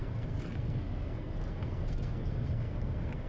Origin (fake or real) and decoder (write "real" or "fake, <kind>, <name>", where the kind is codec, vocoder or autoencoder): fake, codec, SNAC